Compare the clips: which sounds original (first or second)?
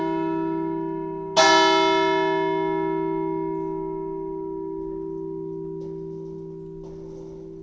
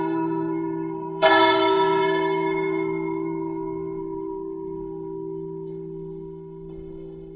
first